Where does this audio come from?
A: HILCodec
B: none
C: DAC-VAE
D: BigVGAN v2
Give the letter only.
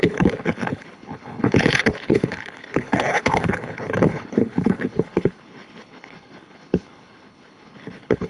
A